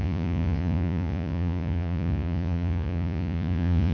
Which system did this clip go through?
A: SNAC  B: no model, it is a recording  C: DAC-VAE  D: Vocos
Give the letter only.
D